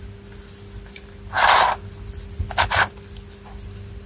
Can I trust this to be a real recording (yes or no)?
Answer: yes